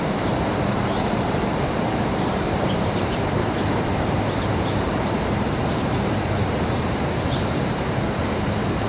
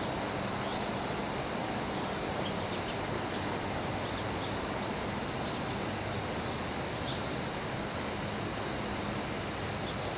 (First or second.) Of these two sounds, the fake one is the first